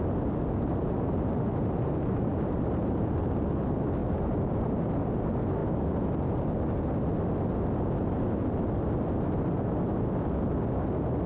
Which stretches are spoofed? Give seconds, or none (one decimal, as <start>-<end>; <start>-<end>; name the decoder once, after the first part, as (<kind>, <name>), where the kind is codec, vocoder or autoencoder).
0.8-3.5 (vocoder, BigVGAN v2); 4.0-4.9